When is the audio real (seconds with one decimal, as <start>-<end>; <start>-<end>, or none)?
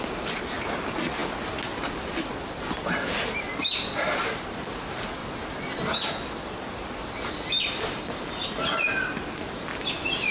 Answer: 0.0-10.3